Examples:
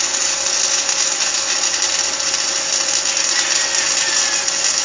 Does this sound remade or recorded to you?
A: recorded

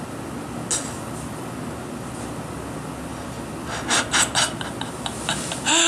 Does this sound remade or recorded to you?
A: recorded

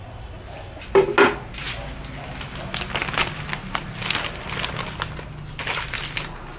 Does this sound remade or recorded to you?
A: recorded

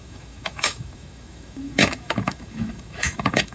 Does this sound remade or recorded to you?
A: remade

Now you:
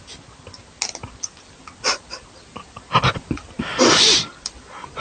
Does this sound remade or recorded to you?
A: recorded